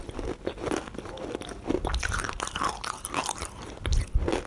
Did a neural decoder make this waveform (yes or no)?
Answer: no